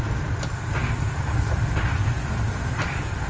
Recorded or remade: recorded